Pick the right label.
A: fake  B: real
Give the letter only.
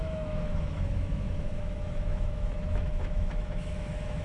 A